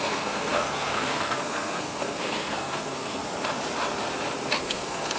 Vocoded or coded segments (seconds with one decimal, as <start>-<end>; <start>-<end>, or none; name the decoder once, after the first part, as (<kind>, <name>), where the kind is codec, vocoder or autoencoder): 0.0-3.2 (codec, SNAC); 4.6-5.2